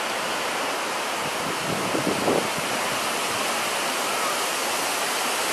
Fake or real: real